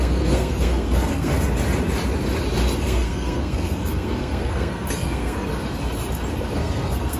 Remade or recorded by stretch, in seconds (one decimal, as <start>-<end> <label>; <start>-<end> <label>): 0.0-1.3 remade; 1.3-2.8 recorded; 2.8-5.5 remade; 5.5-6.6 recorded; 6.6-7.2 remade